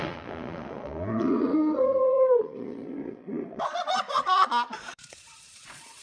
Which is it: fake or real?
fake